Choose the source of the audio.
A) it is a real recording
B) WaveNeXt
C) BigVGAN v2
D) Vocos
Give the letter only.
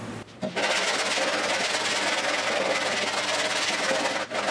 A